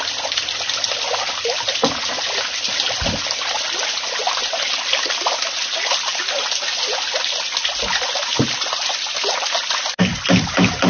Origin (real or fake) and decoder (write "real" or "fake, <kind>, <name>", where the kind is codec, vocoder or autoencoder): real